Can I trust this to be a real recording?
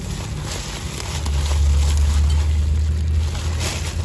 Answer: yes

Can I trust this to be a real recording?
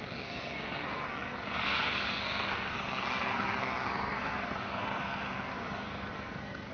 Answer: no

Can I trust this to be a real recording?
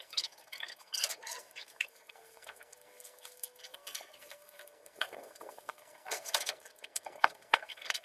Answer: no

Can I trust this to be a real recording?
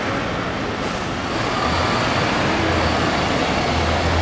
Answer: yes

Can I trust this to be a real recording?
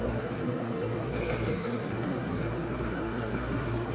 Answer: no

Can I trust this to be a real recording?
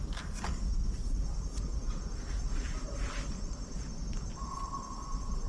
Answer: yes